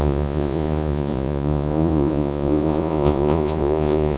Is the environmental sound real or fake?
fake